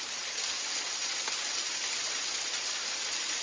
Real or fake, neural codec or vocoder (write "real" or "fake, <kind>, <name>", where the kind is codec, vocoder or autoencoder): real